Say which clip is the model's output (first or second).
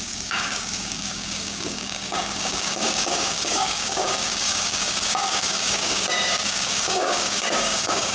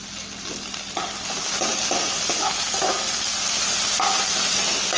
first